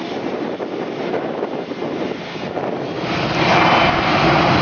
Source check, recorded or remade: recorded